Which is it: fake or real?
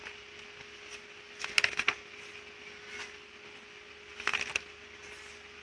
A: real